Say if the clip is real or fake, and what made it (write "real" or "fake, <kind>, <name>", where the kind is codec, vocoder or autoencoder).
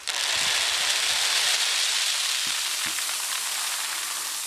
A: real